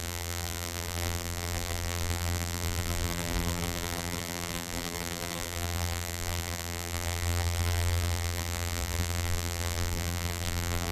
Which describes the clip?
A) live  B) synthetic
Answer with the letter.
B